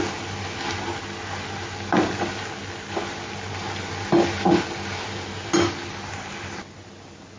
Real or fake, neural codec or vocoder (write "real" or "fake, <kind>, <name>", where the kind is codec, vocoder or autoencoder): real